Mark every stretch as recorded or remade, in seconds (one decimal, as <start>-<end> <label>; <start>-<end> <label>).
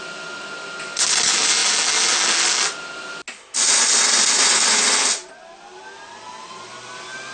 0.0-7.3 recorded